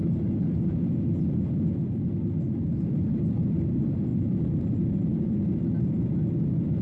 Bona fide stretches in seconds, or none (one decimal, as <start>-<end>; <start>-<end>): 0.0-6.8